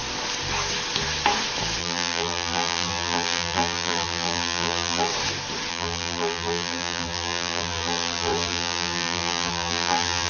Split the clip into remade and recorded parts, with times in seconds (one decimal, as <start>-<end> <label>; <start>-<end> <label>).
0.0-1.8 recorded; 1.8-5.1 remade; 5.1-5.7 recorded; 5.7-10.3 remade